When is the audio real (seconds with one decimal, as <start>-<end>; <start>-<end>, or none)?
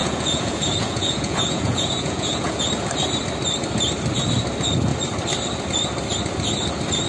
2.6-7.1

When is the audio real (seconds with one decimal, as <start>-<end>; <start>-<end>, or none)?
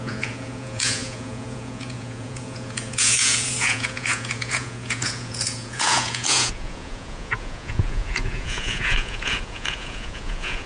none